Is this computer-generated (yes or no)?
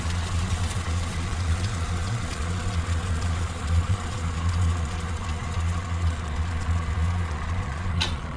yes